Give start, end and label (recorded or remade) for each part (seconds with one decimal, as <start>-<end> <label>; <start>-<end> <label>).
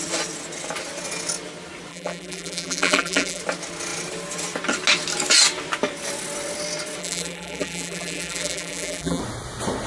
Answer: 0.0-1.9 recorded; 1.9-3.4 remade; 3.4-7.0 recorded; 7.0-9.2 remade; 9.2-9.9 recorded